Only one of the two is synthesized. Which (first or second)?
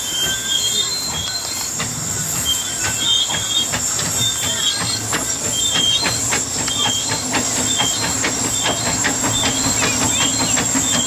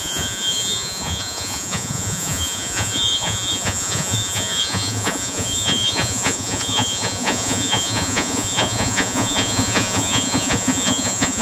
second